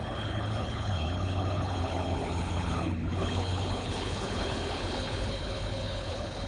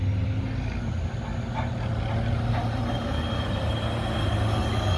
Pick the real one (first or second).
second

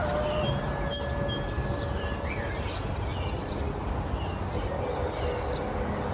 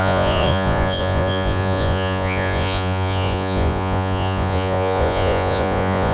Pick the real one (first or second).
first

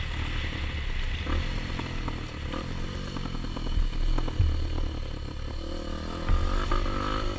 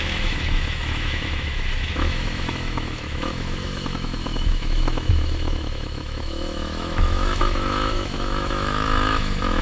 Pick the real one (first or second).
first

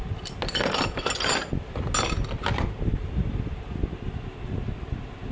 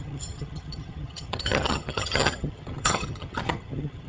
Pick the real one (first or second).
first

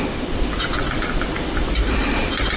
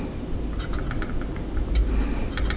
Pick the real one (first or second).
second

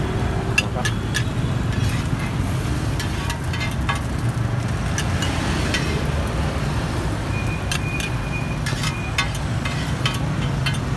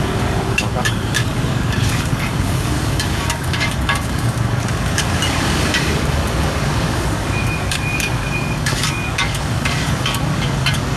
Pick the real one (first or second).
first